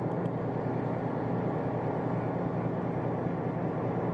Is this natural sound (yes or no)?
yes